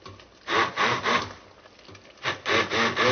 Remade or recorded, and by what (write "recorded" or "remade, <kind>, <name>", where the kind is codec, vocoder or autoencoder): recorded